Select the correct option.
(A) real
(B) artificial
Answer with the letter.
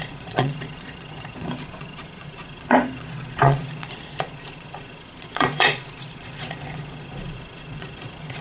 B